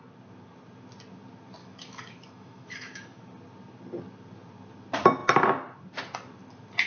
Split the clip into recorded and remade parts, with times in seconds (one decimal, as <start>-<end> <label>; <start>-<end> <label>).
0.0-1.6 recorded; 1.6-3.2 remade; 3.2-6.9 recorded